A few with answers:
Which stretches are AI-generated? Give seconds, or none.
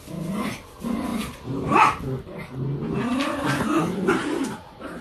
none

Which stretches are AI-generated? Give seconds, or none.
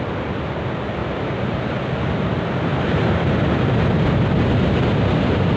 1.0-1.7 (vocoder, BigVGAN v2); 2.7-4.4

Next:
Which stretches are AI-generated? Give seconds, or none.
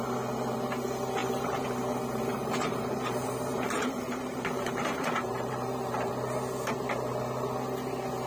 1.2-1.7 (vocoder, BigVGAN v2); 2.3-6.1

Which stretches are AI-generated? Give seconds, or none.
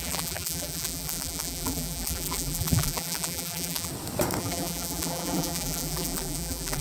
0.0-3.9 (vocoder, BigVGAN v2); 4.4-6.8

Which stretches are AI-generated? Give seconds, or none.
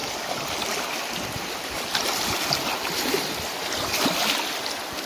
none